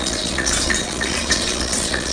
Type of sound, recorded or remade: remade